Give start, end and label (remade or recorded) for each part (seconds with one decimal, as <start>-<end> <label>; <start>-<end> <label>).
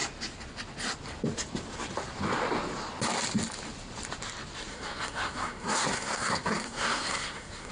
0.0-4.7 recorded; 4.7-7.7 remade